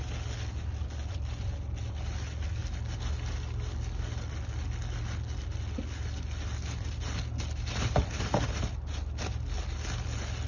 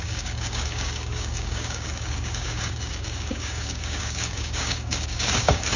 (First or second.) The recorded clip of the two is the first